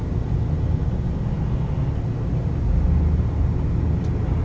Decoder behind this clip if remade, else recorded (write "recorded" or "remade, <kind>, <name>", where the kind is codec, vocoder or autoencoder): recorded